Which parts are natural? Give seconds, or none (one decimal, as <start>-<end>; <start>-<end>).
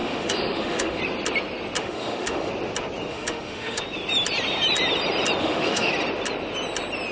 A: 1.0-1.8; 2.5-3.1; 3.8-5.4; 5.9-7.1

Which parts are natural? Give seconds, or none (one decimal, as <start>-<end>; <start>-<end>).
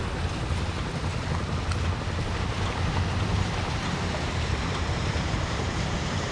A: 0.0-3.3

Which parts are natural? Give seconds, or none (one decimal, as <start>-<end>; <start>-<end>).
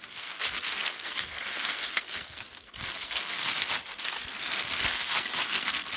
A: none